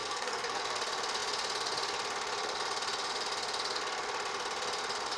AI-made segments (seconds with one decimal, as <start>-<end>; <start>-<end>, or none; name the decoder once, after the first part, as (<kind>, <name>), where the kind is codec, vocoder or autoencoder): 0.0-0.6 (codec, SNAC)